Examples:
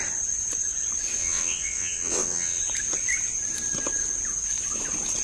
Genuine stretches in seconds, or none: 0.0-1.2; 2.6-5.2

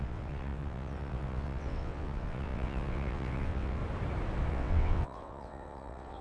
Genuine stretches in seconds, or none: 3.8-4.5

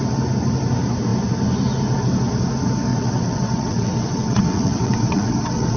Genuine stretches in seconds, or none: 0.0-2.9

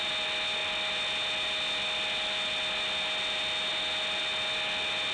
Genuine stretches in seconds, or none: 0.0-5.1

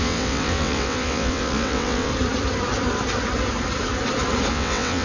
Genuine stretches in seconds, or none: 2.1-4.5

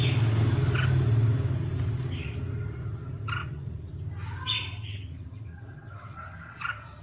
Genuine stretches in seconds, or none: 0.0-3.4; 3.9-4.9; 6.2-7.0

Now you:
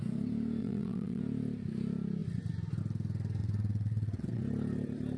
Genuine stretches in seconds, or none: 0.0-0.6; 1.2-3.4; 4.4-5.2